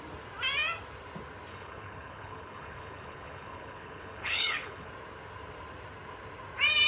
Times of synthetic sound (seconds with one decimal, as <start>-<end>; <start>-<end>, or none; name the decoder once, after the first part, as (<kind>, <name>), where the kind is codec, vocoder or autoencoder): 1.5-4.9 (codec, HILCodec)